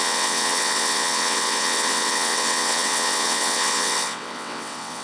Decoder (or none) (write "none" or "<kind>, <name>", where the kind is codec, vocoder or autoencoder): vocoder, WaveNeXt